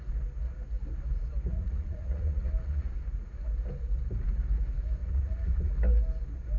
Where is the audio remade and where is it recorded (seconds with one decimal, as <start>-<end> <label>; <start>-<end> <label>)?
0.0-1.5 recorded; 1.5-2.9 remade; 2.9-5.0 recorded; 5.0-5.7 remade; 5.7-6.6 recorded